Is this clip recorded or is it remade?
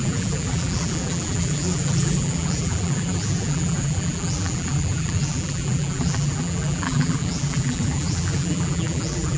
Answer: remade